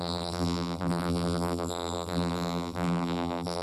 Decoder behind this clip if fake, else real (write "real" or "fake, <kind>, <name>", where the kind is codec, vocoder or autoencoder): fake, vocoder, BigVGAN v2